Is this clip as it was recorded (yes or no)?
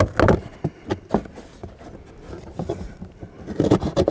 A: yes